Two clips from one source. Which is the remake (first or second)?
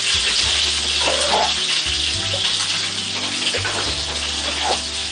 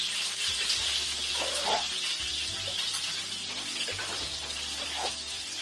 second